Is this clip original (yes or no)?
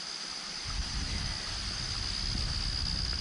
yes